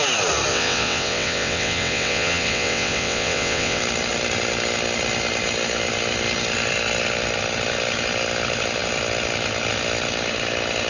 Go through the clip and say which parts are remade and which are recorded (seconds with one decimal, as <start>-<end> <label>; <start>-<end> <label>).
0.0-0.5 recorded; 0.5-3.8 remade; 3.8-10.9 recorded